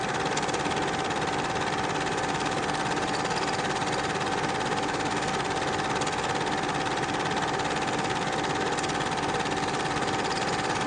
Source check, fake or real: real